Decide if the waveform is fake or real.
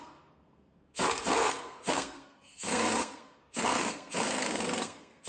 fake